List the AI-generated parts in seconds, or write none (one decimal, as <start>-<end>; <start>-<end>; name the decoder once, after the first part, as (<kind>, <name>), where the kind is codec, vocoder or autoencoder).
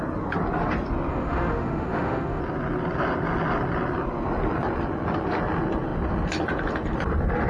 1.1-2.4 (autoencoder, DAC-VAE)